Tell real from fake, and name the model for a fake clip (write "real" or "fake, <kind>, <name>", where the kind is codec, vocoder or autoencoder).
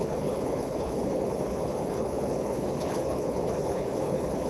fake, codec, HILCodec